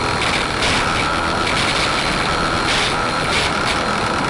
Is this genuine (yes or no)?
yes